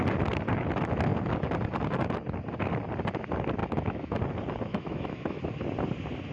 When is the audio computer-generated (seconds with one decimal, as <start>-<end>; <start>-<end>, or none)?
3.6-4.2; 4.7-5.4